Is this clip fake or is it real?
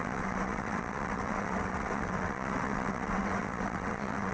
fake